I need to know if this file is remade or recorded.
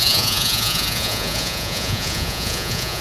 remade